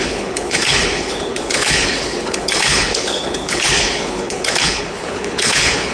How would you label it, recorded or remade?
remade